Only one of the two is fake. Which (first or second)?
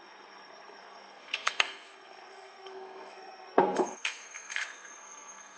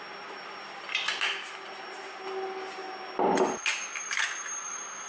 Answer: first